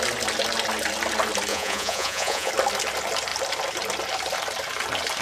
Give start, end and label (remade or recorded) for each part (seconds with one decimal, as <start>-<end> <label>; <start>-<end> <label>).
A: 0.0-1.5 recorded; 1.5-2.5 remade; 2.5-5.2 recorded